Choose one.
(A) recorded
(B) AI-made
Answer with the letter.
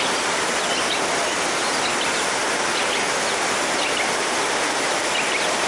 A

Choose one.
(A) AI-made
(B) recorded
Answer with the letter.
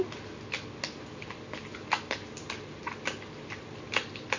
B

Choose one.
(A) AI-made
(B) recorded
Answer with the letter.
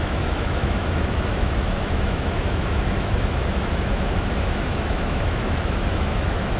A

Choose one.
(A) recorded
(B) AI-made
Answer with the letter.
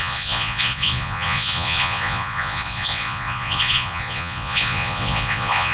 B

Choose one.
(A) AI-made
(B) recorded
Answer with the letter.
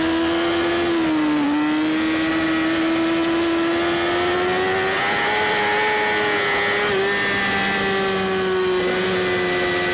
B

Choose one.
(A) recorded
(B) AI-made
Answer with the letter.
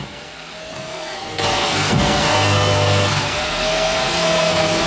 B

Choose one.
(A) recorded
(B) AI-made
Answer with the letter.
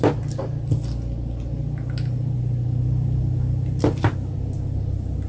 A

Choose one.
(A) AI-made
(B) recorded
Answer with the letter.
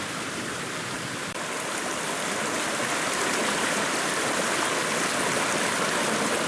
A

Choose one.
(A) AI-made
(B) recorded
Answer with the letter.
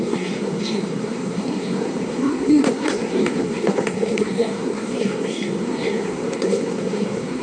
A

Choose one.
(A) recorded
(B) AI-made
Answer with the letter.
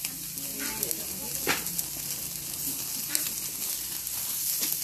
A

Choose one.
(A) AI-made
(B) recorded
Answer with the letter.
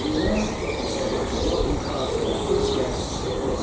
A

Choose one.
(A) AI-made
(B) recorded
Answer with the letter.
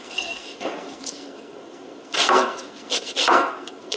A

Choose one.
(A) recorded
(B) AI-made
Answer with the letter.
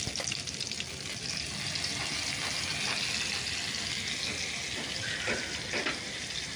A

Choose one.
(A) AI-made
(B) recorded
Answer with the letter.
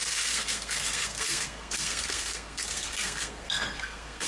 A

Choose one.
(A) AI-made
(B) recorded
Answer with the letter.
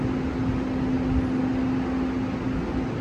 B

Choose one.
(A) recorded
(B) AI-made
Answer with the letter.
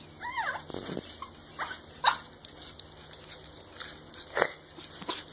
A